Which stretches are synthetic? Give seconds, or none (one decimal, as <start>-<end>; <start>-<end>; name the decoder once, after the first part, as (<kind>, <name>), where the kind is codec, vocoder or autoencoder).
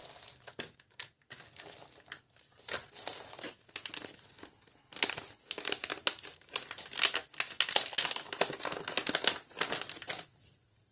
none